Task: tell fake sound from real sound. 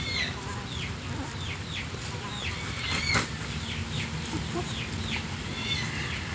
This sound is real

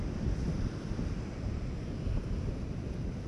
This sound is real